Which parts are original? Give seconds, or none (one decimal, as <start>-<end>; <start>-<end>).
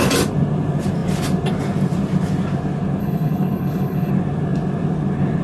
0.0-3.0; 4.1-5.4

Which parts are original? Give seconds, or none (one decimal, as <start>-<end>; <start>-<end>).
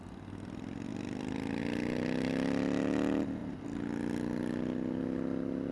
0.0-5.7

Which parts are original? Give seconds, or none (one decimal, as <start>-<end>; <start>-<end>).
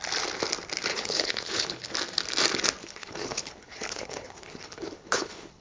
0.0-0.9; 1.9-2.8